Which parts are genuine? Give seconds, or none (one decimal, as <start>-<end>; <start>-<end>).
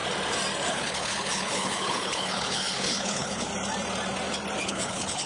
0.0-0.7; 3.5-4.6